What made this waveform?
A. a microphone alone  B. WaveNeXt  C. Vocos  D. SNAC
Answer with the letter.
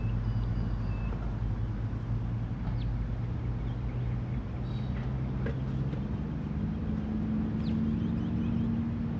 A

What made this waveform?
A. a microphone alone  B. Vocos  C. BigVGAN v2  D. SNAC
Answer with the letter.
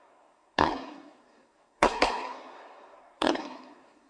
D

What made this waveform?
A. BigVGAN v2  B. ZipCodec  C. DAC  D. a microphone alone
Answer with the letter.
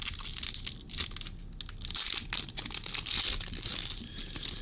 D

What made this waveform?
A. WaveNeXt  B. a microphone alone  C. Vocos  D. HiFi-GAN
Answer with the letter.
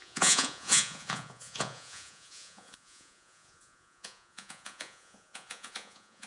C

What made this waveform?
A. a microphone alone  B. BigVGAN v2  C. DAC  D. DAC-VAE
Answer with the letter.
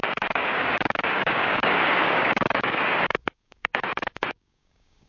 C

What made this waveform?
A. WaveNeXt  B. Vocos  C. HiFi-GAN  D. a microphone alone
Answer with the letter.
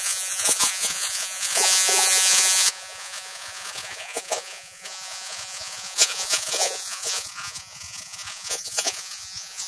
B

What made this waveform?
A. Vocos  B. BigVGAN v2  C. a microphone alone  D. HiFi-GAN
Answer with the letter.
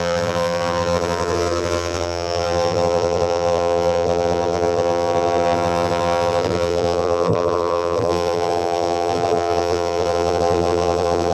B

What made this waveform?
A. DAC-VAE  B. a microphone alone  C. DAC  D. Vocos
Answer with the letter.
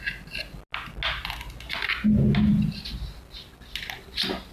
B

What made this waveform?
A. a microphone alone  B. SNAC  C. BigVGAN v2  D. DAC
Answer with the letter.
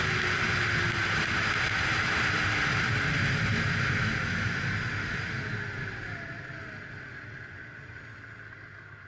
A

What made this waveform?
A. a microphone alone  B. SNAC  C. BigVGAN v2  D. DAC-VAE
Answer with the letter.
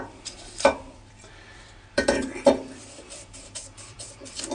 C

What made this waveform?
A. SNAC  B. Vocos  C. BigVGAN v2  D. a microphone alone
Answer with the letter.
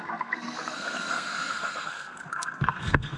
A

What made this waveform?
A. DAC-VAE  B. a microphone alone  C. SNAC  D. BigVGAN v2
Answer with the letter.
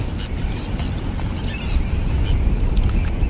B